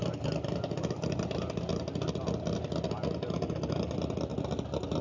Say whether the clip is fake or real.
real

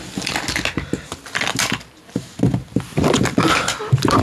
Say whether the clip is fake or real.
real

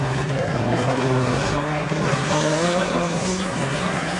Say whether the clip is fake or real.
fake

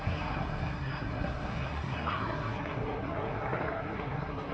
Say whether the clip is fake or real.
fake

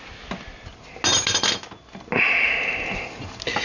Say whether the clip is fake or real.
real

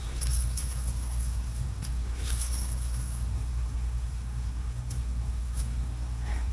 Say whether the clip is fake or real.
fake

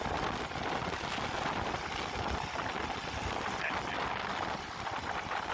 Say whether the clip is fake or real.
real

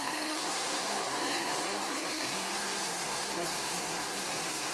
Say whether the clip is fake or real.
fake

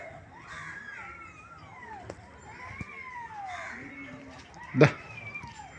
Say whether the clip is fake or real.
real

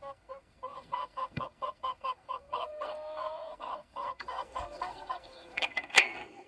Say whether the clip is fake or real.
fake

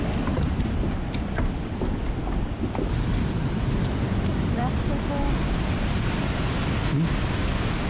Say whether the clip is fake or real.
real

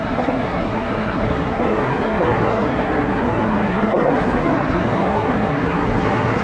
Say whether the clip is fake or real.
fake